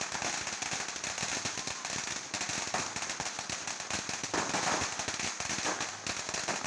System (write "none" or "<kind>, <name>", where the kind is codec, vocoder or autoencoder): none